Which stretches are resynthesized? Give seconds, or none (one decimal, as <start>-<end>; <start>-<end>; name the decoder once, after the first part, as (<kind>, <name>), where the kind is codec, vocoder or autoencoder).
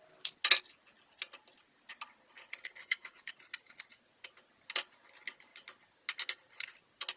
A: 2.8-3.3 (codec, DAC)